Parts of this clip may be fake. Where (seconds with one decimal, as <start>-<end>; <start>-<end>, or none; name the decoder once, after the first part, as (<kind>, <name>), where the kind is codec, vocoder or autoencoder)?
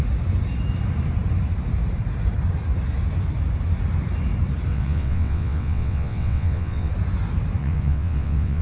4.7-6.9 (vocoder, WaveNeXt); 7.6-8.6